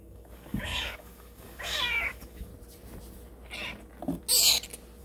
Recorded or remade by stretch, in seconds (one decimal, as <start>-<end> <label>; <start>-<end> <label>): 0.0-2.5 remade; 2.5-5.0 recorded